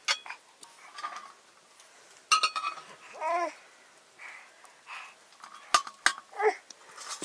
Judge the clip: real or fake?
real